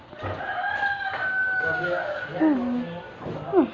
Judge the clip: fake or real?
real